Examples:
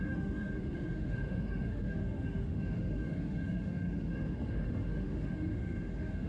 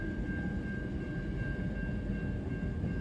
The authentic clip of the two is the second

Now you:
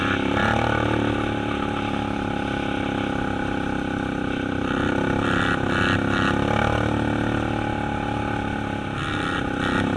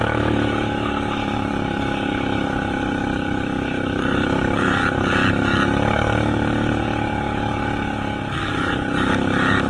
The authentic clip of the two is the first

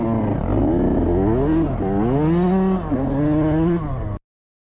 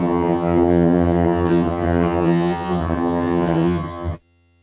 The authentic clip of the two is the first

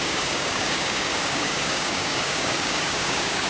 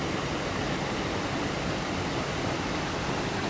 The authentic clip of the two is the second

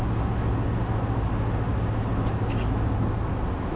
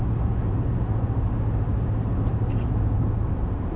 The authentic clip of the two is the first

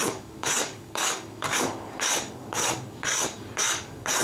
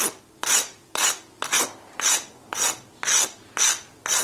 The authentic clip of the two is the second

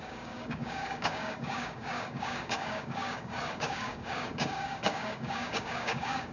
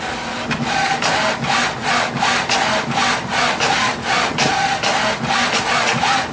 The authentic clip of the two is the second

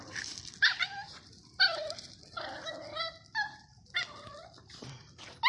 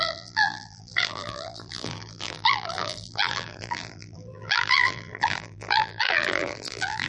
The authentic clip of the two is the first